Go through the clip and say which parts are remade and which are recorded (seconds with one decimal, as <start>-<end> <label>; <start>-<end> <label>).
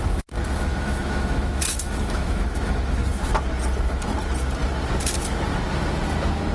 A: 0.0-0.7 recorded; 0.7-3.0 remade; 3.0-6.5 recorded